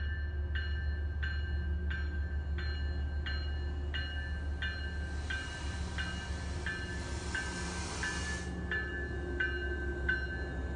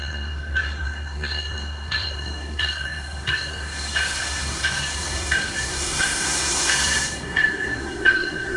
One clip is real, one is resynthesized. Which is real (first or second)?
first